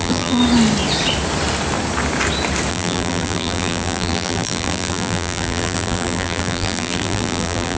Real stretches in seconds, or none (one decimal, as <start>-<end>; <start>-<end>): 0.4-2.7